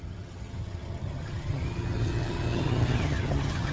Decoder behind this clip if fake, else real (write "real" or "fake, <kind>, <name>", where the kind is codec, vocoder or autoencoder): fake, vocoder, HiFi-GAN